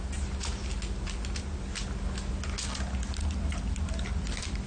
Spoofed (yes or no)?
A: no